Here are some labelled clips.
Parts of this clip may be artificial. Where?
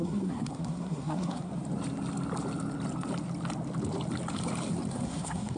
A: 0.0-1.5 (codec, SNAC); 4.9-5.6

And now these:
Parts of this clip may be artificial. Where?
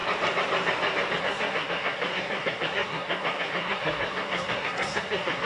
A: 1.2-5.5 (codec, SNAC)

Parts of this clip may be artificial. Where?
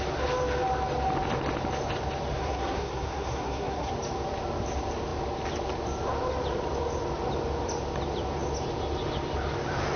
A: 2.3-3.9 (codec, SNAC)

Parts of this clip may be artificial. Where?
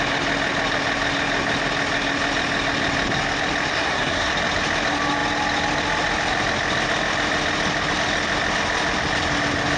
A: 3.7-4.3 (codec, SNAC)